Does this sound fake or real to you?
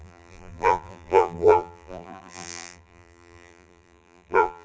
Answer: fake